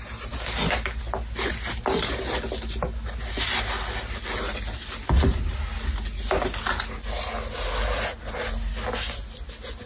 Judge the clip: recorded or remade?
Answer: recorded